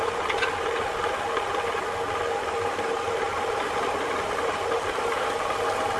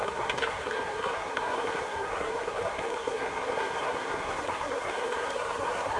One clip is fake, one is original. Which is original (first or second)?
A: first